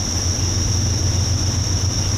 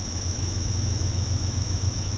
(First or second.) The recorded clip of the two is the first